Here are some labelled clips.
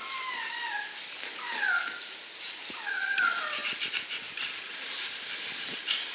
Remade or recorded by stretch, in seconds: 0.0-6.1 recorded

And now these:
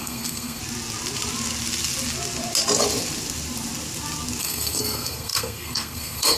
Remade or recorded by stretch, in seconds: 0.0-0.6 remade; 0.6-4.4 recorded; 4.4-6.4 remade

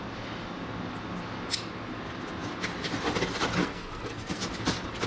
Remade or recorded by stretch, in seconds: 0.0-3.6 recorded; 3.6-4.4 remade; 4.4-5.1 recorded